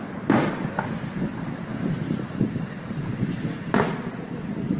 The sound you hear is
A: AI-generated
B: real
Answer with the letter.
B